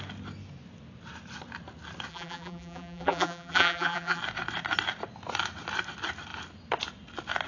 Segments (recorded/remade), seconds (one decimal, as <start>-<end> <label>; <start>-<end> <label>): 0.0-2.1 recorded; 2.1-4.2 remade; 4.2-7.5 recorded